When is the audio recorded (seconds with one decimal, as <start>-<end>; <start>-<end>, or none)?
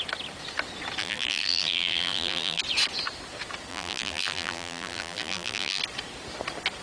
0.0-1.0; 2.6-3.7; 5.8-6.8